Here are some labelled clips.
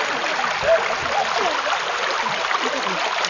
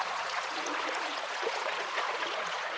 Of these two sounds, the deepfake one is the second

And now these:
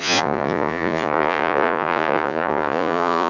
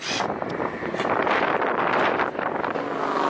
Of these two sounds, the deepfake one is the first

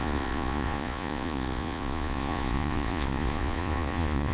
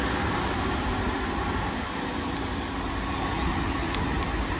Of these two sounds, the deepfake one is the first